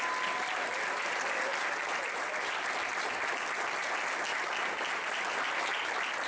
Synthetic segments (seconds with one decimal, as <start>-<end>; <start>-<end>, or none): none